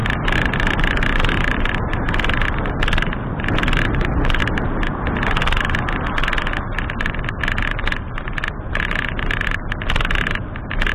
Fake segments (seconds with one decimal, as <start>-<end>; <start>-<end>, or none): 0.0-4.4